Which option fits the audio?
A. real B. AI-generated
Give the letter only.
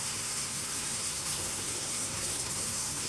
B